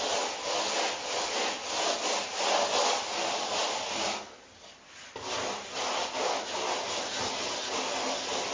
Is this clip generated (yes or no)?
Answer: no